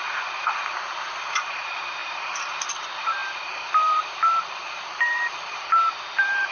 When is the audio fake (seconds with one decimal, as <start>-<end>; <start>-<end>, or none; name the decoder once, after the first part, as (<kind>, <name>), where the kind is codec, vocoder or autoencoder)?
0.0-6.5 (vocoder, BigVGAN v2)